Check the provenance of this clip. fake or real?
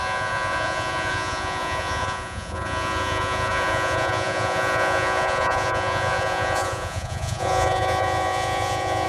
fake